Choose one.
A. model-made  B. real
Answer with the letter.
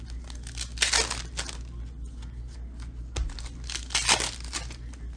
B